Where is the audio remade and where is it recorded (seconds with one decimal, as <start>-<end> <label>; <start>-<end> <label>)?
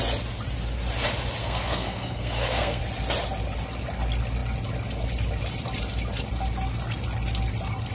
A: 0.0-1.4 recorded; 1.4-2.8 remade; 2.8-7.9 recorded